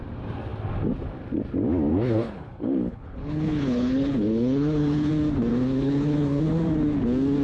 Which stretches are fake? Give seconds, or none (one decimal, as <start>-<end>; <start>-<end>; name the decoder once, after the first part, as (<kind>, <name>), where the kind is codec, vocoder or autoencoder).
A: 1.9-5.1 (codec, HILCodec); 5.5-6.4